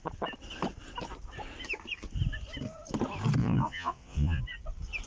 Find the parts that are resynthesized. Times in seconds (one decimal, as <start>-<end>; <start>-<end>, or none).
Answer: 3.4-4.4